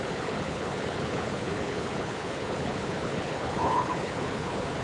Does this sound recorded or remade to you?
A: remade